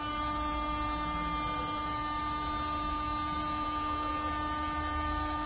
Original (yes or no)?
yes